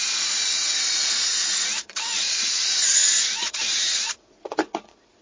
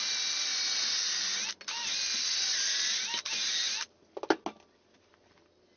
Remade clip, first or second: first